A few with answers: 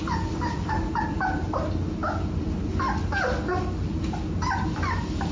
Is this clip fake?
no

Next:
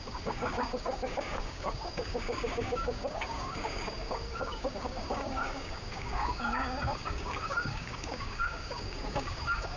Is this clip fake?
yes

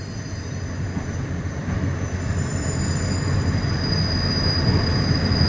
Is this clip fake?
no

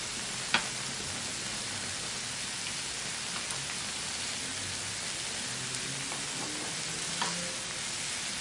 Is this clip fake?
no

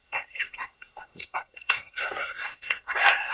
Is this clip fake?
yes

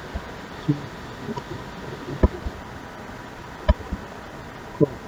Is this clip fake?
no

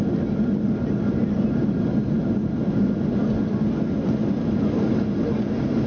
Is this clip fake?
no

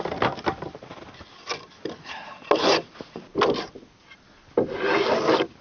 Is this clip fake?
no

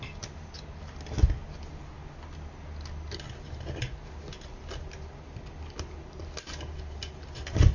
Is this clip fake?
no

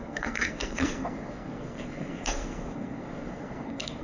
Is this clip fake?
yes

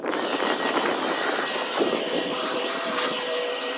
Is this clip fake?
yes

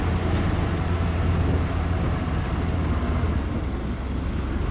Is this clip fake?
no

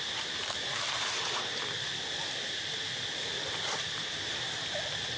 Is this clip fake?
no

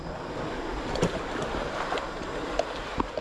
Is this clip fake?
no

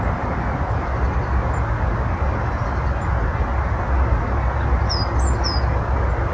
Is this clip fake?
no